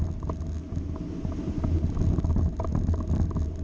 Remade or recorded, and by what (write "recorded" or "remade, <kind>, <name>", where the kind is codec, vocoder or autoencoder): recorded